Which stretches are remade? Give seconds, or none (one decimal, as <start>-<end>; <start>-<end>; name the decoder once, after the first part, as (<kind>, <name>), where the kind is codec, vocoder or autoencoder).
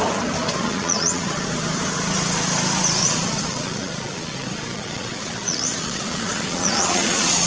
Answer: 0.6-1.4 (vocoder, Vocos); 3.0-7.5